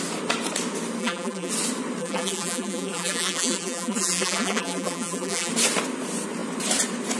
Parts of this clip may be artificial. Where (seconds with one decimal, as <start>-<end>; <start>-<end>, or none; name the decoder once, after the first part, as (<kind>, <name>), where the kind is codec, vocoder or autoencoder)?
1.0-1.5 (vocoder, BigVGAN v2); 2.0-5.5